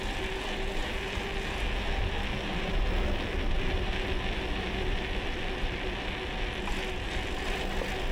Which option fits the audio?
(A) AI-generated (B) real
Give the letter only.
B